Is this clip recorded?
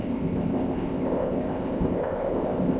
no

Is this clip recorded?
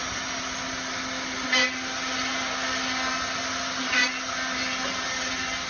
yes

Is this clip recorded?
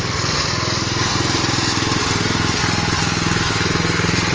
yes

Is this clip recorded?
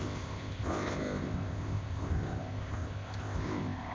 no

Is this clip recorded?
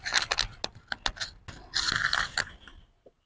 yes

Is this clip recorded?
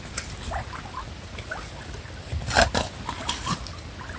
yes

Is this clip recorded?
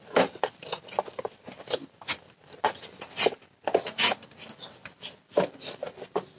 yes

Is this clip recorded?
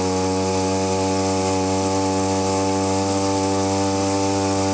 yes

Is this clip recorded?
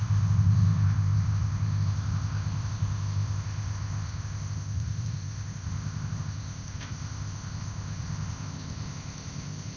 no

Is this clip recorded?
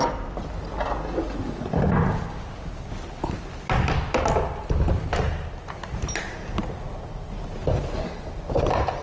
yes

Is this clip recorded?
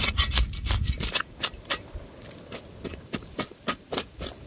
yes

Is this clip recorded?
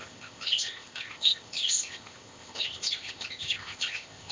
no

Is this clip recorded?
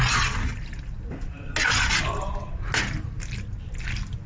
yes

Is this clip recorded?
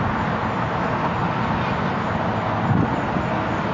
yes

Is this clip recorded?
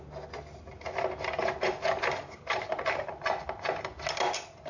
yes